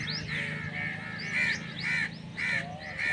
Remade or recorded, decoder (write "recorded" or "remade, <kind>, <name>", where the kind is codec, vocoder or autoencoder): recorded